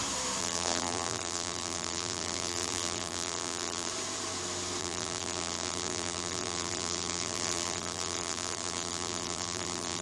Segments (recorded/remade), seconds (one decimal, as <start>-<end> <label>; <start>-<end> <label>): 0.0-0.4 recorded; 0.4-3.9 remade; 3.9-4.8 recorded; 4.8-10.0 remade